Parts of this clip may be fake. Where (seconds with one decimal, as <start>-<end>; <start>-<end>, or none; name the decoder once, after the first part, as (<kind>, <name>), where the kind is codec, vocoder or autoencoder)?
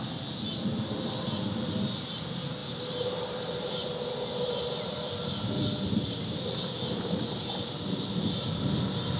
none